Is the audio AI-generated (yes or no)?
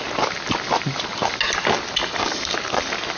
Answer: no